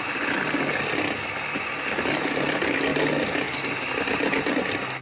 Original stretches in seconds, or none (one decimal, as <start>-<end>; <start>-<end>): 0.0-5.0